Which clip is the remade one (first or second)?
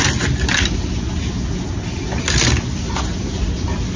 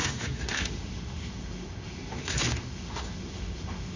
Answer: second